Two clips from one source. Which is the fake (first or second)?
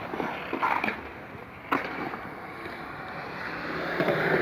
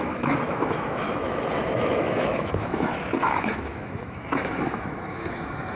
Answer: second